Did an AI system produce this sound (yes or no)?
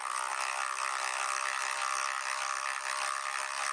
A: no